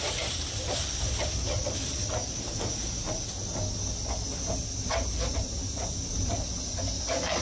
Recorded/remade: recorded